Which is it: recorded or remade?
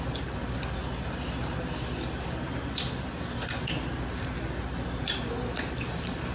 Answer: recorded